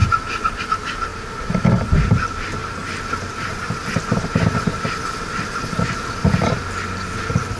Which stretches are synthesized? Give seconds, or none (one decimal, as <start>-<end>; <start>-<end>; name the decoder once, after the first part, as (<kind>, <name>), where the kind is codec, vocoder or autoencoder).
none